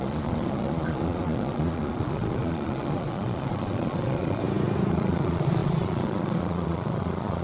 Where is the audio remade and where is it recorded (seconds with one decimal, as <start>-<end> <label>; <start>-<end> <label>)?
0.0-4.4 remade; 4.4-4.9 recorded; 4.9-7.4 remade